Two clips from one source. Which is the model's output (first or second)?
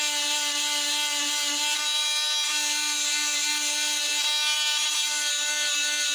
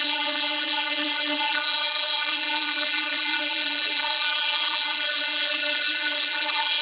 second